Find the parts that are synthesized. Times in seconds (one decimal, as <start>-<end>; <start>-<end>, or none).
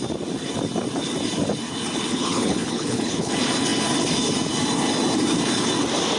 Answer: 2.1-3.3